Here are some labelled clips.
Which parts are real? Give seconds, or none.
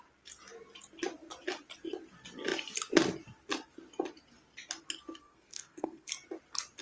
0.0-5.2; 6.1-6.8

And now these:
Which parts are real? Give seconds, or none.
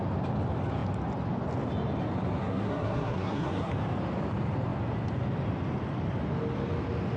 0.0-2.4; 3.7-7.2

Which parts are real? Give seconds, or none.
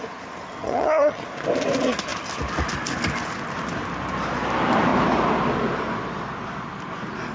0.0-0.6; 1.2-7.3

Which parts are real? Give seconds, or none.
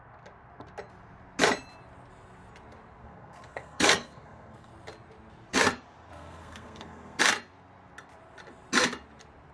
0.0-3.0; 4.7-6.1; 7.2-9.5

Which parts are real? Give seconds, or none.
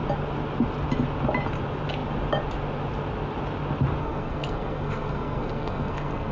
0.0-4.0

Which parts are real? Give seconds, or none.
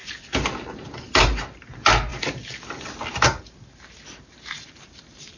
0.0-1.2; 2.1-2.8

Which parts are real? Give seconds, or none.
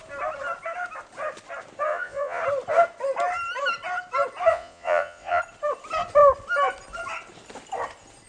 0.0-1.9; 2.4-4.5; 5.4-8.3